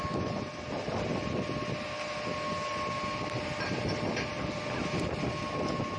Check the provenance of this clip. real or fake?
real